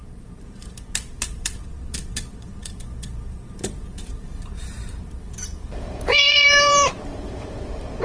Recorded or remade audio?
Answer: remade